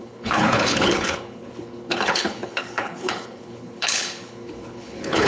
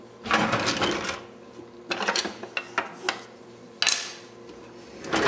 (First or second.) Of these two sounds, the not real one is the first